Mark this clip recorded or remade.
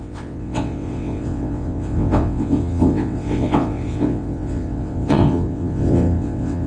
remade